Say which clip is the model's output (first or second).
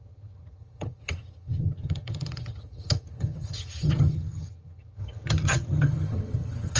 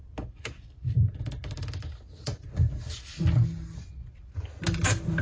first